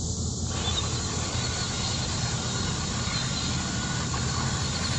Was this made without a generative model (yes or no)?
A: yes